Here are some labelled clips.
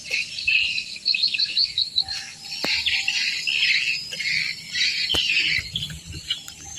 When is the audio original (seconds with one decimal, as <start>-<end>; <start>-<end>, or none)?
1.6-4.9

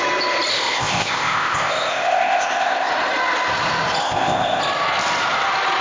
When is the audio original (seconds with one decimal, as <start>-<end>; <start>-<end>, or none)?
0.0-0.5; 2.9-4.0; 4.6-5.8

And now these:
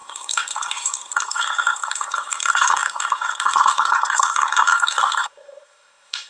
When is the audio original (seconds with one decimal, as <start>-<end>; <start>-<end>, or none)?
none

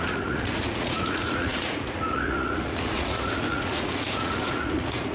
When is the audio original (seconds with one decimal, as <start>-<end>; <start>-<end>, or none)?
none